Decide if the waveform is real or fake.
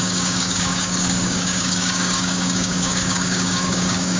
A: fake